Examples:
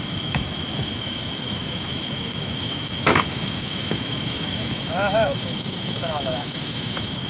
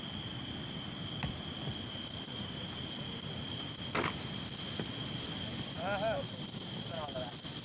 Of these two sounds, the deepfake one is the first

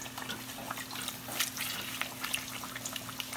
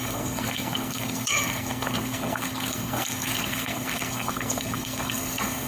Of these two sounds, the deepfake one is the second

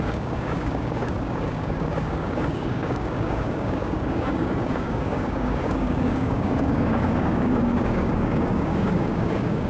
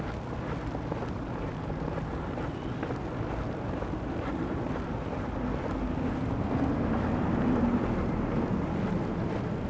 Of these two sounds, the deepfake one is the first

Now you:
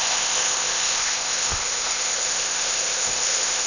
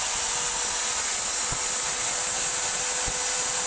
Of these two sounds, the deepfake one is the first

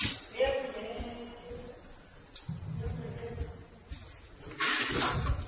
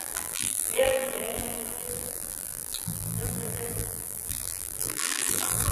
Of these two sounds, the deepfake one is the second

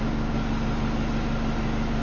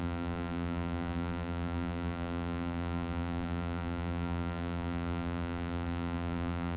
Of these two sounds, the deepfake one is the second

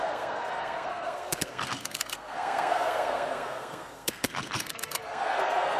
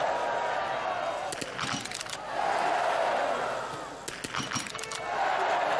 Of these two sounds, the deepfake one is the first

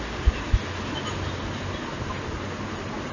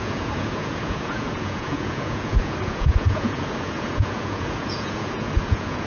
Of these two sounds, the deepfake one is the second